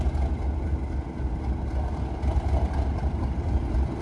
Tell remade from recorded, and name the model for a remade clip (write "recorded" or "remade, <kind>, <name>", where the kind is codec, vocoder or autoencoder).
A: recorded